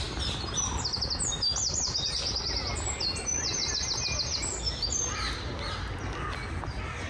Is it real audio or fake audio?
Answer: real